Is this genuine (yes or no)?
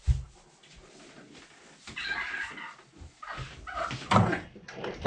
yes